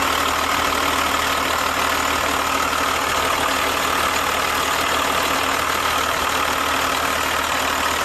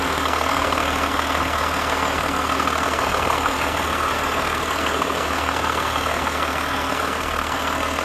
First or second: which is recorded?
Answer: first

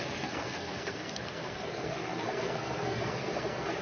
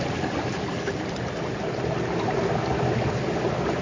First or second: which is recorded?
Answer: second